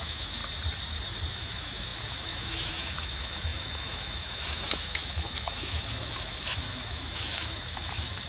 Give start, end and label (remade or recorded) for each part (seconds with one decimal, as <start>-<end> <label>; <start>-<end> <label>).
0.0-0.4 remade; 0.4-1.3 recorded; 1.3-8.3 remade